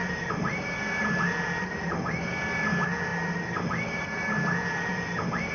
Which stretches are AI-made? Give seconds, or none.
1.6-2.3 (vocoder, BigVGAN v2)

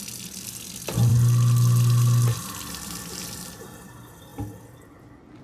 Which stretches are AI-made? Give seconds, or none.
0.0-1.1 (vocoder, BigVGAN v2); 2.4-5.4

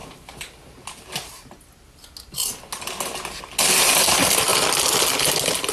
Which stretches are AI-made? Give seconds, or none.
none